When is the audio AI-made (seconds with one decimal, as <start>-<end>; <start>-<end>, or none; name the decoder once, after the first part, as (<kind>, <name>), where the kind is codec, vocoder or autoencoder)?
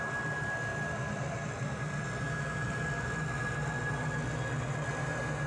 none